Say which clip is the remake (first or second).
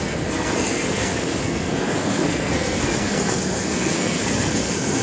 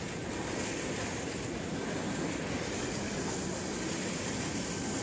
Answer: first